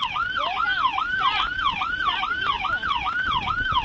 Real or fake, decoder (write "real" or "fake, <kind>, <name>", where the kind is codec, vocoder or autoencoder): real